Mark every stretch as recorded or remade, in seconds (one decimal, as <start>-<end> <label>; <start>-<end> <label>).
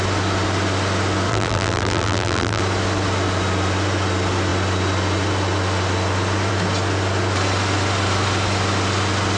0.0-1.3 recorded; 1.3-2.6 remade; 2.6-9.4 recorded